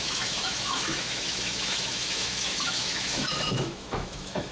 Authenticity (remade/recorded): remade